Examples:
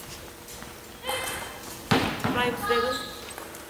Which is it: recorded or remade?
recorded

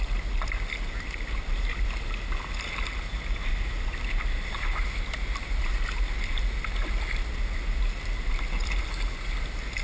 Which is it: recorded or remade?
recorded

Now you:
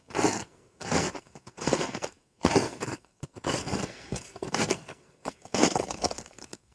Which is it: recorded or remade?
remade